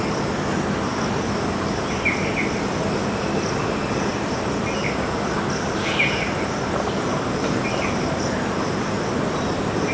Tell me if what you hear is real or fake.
real